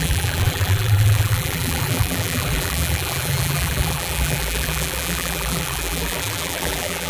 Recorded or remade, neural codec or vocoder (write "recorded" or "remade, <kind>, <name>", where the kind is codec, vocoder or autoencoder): remade, vocoder, BigVGAN v2